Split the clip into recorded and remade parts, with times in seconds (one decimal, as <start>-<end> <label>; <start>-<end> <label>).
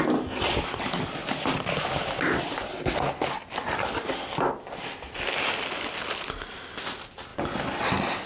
0.0-8.3 recorded